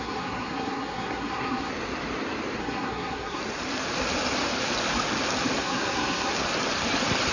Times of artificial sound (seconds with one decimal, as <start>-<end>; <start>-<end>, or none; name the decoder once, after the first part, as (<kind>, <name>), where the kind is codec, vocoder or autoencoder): 0.0-1.7 (codec, SNAC); 2.6-3.4; 5.6-6.3